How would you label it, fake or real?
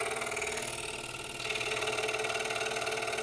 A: real